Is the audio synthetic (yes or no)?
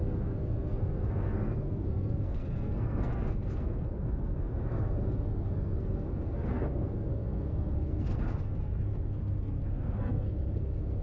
yes